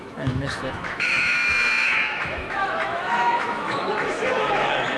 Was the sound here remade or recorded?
remade